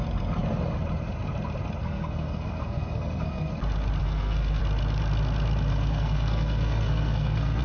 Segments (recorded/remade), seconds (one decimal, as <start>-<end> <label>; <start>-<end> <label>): 0.0-1.8 recorded; 1.8-3.5 remade; 3.5-4.0 recorded; 4.0-4.6 remade; 4.6-5.7 recorded; 5.7-7.6 remade